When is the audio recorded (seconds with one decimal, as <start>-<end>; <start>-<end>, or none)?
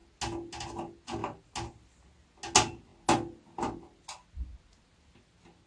0.0-5.7